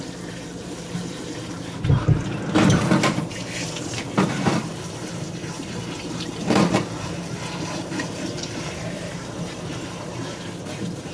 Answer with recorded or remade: remade